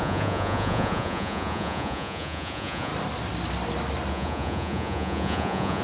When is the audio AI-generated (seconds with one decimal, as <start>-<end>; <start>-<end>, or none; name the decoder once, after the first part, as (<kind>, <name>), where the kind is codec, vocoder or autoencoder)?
0.0-2.9 (vocoder, Vocos); 4.1-5.8